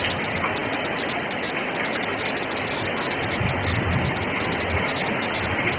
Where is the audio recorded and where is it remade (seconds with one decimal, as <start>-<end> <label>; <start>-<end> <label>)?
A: 0.0-5.8 recorded